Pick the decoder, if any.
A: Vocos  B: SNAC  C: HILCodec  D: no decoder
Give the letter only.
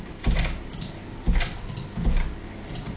D